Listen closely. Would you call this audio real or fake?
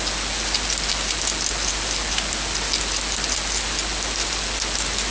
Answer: real